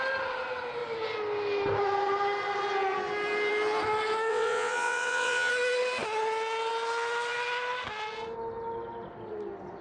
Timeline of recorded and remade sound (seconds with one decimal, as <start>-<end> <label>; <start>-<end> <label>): 0.0-4.3 recorded; 4.3-5.5 remade; 5.5-9.8 recorded